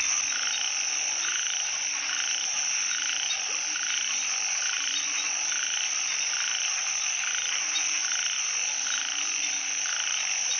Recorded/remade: recorded